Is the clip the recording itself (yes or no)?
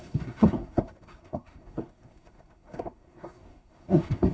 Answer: no